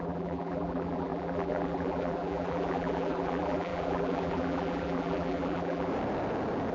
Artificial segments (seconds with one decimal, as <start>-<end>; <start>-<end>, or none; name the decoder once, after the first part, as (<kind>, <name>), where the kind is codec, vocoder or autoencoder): 0.0-5.9 (vocoder, BigVGAN v2)